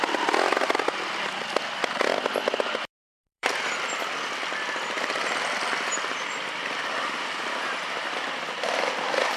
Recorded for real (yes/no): no